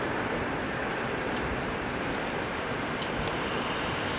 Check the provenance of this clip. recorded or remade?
recorded